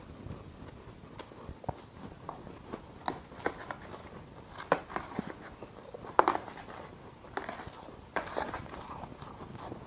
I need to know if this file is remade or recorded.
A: recorded